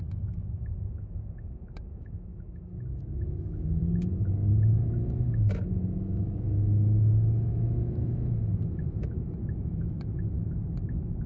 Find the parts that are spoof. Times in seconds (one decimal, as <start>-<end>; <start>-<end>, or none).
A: 0.0-11.3